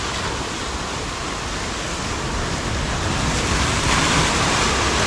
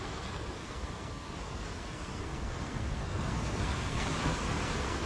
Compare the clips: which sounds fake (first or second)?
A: second